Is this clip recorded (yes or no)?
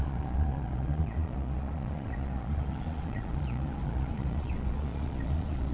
no